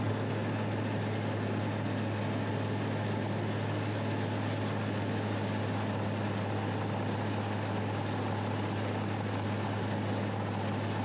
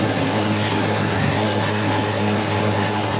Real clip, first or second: first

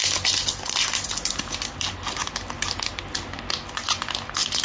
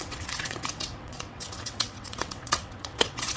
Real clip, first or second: first